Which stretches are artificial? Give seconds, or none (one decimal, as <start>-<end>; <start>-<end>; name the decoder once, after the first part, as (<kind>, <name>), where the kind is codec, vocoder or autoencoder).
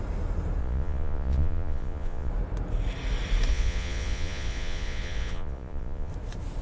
0.6-2.3 (vocoder, Vocos); 3.5-6.1